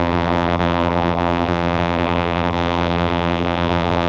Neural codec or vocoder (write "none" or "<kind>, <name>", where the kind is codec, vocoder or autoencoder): vocoder, BigVGAN v2